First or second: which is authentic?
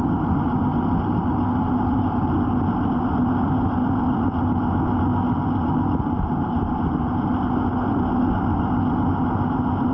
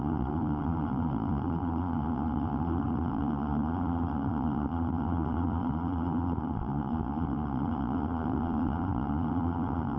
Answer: first